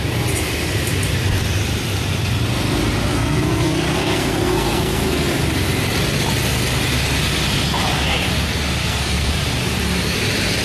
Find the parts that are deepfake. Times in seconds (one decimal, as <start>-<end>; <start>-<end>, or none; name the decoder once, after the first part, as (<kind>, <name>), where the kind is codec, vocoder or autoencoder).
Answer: 3.1-5.3 (codec, SNAC); 8.8-9.3